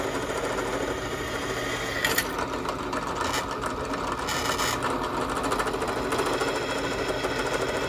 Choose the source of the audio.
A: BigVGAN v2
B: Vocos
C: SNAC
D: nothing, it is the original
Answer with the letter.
D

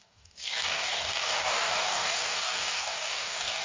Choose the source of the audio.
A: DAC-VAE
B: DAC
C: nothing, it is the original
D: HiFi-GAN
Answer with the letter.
B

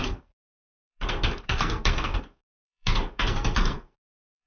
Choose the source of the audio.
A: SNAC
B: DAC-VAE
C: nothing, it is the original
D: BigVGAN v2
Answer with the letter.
A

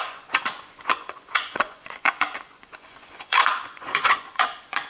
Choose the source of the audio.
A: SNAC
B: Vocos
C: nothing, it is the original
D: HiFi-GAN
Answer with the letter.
B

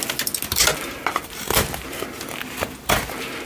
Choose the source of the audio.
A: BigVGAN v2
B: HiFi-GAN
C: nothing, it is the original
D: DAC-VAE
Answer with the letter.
C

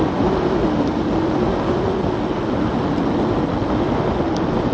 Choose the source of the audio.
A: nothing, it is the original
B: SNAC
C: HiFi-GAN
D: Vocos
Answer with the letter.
A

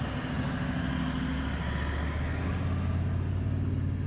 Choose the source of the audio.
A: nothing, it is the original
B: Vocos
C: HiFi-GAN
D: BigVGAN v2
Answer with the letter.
A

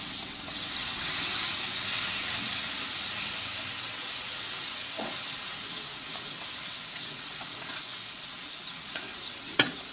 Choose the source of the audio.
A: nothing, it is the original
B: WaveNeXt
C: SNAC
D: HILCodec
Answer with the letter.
B